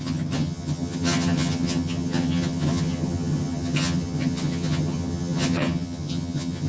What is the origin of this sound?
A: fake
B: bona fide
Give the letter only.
A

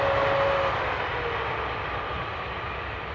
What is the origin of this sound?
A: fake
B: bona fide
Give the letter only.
B